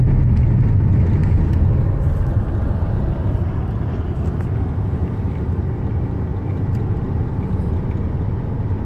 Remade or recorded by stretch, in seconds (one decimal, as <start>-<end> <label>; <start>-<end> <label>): 0.0-8.8 recorded